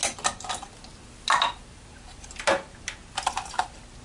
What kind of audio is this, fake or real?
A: real